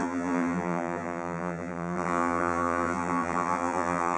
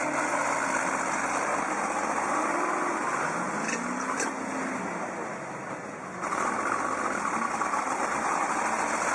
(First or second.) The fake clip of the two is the first